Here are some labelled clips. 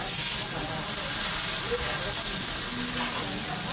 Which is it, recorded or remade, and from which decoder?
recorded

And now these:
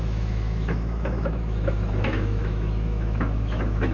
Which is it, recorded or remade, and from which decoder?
remade, autoencoder, DAC-VAE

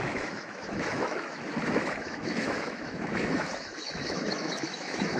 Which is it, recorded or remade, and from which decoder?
remade, autoencoder, DAC-VAE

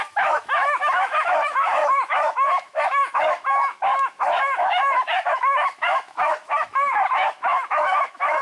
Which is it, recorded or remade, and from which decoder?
remade, autoencoder, DAC-VAE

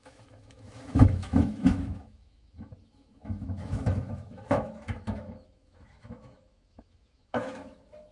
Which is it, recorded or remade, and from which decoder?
remade, autoencoder, DAC-VAE